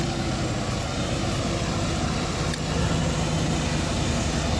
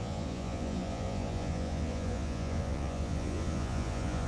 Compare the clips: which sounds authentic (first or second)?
first